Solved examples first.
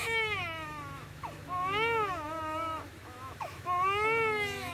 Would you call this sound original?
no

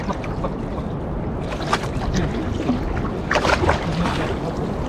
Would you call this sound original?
yes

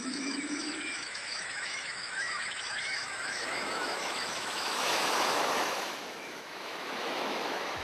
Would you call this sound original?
no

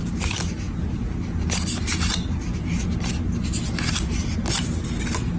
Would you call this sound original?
yes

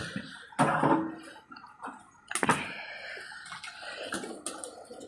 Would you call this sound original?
yes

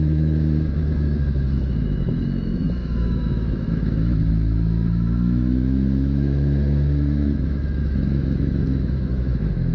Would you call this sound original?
no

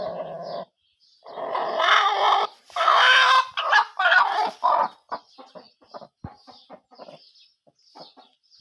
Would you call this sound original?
yes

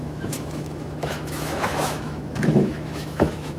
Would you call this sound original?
no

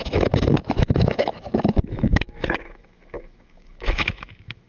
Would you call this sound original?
no